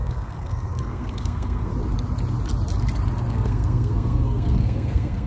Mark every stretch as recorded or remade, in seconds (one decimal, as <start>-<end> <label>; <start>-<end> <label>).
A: 0.0-1.7 remade; 1.7-3.3 recorded; 3.3-5.3 remade